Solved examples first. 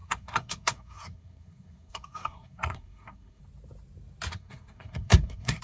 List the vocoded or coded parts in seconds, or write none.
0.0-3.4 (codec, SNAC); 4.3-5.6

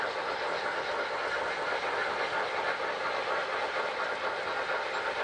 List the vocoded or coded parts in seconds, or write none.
none

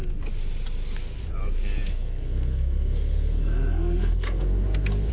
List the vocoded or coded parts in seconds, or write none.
1.9-5.1 (codec, SNAC)

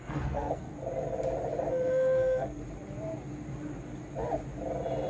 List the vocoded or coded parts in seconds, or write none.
0.0-0.7 (codec, SNAC); 1.7-2.6

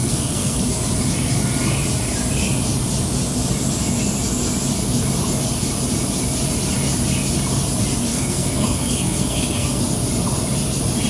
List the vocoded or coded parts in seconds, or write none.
0.0-0.6 (codec, SNAC); 8.1-9.8

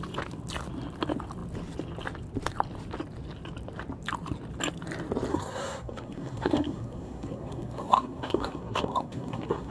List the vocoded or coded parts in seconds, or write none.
5.3-9.7 (codec, SNAC)

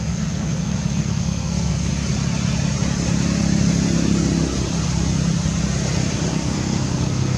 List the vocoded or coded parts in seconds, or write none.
0.0-1.9 (codec, SNAC); 6.3-7.4